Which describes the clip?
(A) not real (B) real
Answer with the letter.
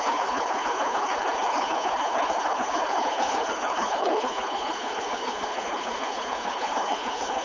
A